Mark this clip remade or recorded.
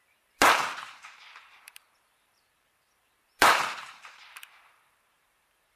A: remade